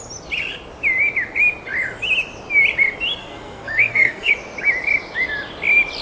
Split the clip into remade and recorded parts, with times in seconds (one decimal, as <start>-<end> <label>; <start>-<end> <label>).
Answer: 0.0-3.2 recorded; 3.2-4.3 remade; 4.3-6.0 recorded